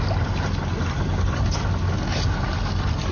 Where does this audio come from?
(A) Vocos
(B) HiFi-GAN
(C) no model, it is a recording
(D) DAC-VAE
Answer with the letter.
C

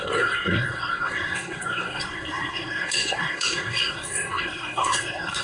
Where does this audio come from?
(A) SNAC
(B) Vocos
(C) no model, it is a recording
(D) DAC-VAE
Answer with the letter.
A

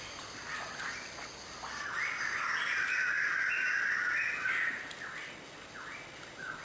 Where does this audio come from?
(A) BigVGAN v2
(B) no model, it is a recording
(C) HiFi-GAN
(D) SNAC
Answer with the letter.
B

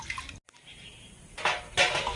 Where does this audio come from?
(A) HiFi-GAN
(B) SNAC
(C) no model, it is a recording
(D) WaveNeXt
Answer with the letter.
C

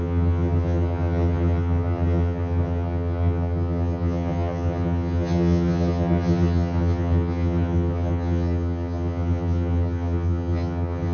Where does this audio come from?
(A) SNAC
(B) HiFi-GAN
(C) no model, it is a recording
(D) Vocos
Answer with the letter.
B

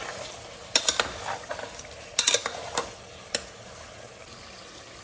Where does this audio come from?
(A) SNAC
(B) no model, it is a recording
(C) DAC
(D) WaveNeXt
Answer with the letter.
B